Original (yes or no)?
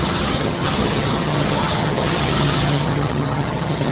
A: no